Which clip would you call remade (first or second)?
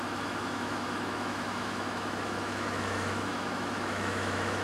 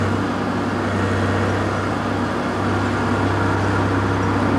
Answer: first